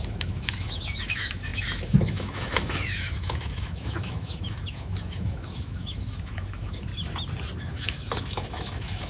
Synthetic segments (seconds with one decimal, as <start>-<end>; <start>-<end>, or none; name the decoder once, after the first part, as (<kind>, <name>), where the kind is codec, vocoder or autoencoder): 0.0-6.9 (autoencoder, DAC-VAE); 7.6-9.1